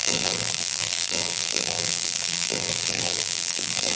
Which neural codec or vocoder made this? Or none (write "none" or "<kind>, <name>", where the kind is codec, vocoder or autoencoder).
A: vocoder, BigVGAN v2